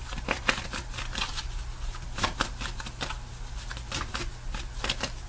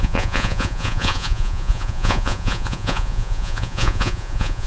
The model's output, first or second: second